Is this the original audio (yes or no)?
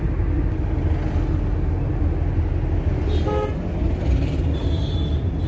yes